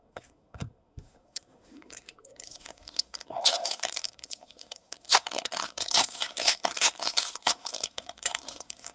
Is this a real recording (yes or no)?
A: no